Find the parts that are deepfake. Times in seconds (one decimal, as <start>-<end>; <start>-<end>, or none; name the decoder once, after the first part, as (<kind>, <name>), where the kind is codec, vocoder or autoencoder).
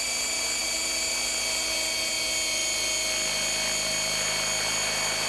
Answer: none